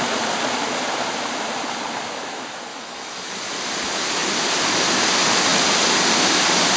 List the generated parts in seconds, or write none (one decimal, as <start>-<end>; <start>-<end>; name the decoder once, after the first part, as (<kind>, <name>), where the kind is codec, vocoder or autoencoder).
2.7-3.3 (autoencoder, DAC-VAE)